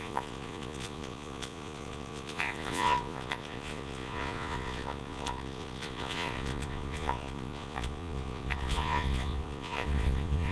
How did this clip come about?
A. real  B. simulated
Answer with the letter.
B